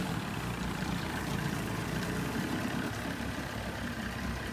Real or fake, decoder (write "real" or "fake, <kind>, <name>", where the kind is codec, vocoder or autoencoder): fake, vocoder, BigVGAN v2